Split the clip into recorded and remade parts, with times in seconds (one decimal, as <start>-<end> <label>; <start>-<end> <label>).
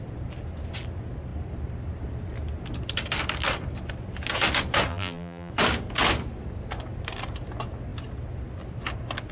0.0-4.9 recorded; 4.9-5.5 remade; 5.5-9.3 recorded